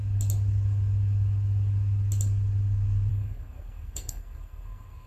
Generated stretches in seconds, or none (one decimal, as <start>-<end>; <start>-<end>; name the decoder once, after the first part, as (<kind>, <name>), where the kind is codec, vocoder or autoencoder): 3.1-5.1 (codec, SNAC)